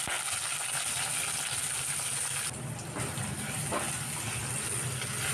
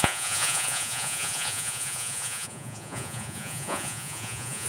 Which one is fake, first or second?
second